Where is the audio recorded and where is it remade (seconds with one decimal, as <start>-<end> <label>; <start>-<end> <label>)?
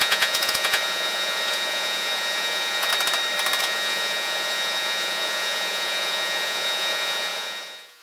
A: 0.0-2.9 remade; 2.9-3.6 recorded; 3.6-8.0 remade